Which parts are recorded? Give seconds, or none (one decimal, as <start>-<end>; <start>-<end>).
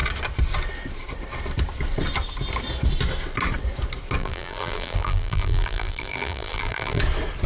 0.0-4.2; 7.0-7.5